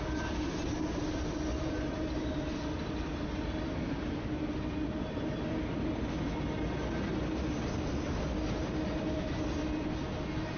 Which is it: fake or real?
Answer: real